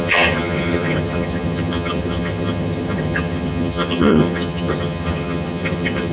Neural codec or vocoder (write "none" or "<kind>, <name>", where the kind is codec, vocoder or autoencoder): vocoder, HiFi-GAN